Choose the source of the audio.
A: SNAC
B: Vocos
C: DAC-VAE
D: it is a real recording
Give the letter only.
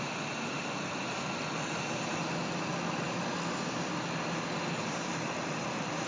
D